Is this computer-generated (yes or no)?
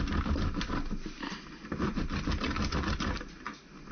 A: no